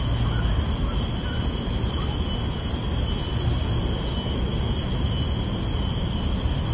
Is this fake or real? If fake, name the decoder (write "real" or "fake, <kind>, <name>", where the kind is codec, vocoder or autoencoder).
real